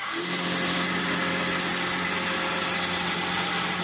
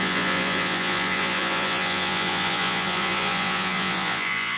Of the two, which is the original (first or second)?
first